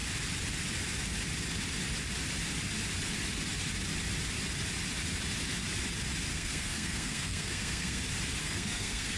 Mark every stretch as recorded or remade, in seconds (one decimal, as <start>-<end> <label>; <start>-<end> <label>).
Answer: 0.0-6.3 recorded; 6.3-8.0 remade; 8.0-8.4 recorded; 8.4-9.2 remade